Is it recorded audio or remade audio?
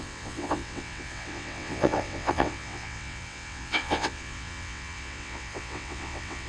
remade